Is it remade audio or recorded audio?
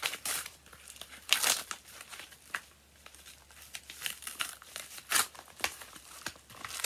remade